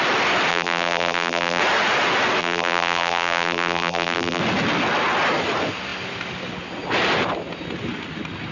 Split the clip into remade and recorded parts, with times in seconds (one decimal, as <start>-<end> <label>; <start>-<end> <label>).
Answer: 0.0-0.5 recorded; 0.5-1.6 remade; 1.6-2.4 recorded; 2.4-4.4 remade; 4.4-8.5 recorded